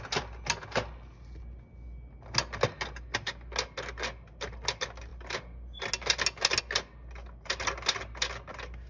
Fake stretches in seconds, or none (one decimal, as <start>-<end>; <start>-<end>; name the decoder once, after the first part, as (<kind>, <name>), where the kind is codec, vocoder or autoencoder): none